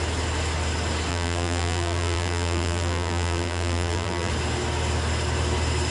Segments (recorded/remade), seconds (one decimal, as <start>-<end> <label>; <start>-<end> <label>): 0.0-1.1 recorded; 1.1-4.3 remade; 4.3-5.9 recorded